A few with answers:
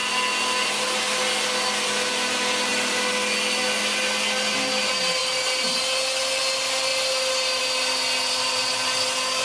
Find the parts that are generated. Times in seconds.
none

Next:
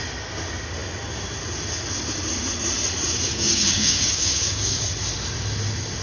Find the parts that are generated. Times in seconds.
3.3-4.8

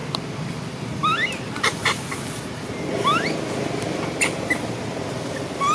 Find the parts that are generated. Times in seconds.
none